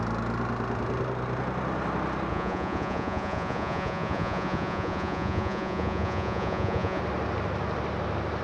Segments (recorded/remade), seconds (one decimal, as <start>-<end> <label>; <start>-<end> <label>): 0.0-2.3 recorded; 2.3-7.0 remade; 7.0-8.4 recorded